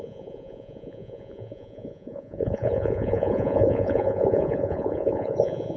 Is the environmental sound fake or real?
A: fake